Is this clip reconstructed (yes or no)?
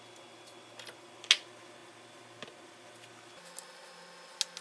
no